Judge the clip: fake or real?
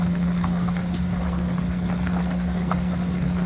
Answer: fake